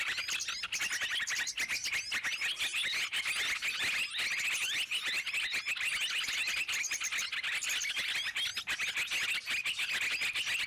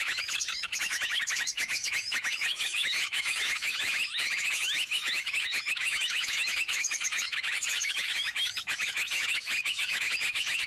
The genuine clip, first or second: first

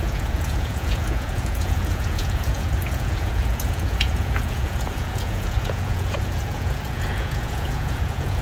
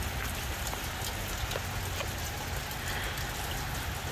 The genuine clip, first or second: second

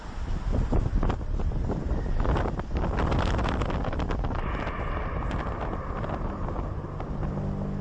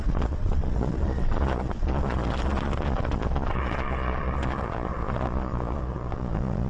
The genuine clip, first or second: first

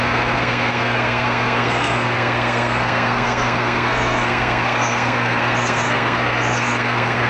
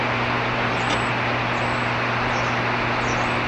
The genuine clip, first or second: second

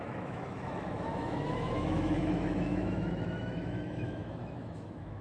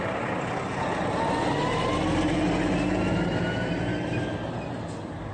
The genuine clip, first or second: second